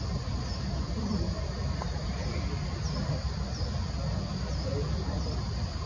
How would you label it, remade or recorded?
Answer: recorded